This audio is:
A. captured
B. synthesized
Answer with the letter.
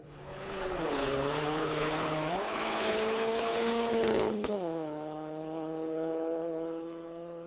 B